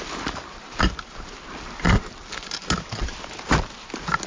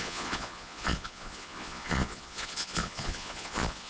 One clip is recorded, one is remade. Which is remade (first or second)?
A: second